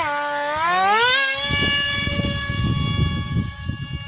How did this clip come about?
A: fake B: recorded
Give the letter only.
B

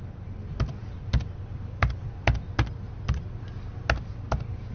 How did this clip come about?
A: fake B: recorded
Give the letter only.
B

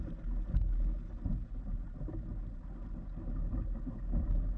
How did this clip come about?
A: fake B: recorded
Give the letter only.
B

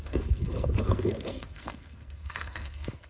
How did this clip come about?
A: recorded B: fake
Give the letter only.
B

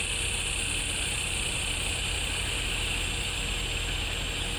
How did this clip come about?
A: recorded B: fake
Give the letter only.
B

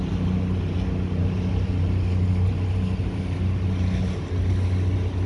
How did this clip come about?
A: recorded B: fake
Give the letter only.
A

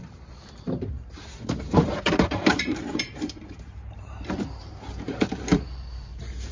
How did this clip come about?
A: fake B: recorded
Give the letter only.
A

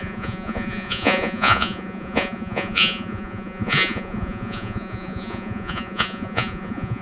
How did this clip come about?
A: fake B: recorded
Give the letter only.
A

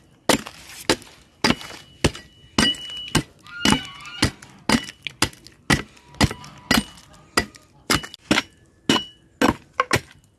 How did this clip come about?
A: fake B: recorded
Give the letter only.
B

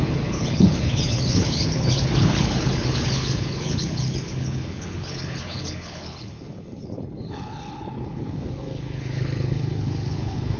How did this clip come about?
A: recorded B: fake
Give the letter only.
B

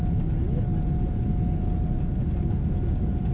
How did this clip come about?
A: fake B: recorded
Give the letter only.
B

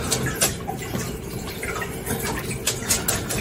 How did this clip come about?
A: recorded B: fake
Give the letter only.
A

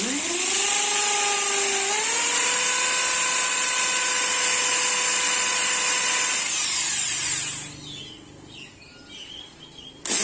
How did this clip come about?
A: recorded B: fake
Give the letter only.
A